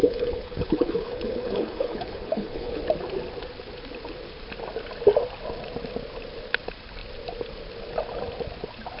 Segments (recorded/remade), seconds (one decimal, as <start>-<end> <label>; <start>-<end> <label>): 0.0-2.8 remade; 2.8-9.0 recorded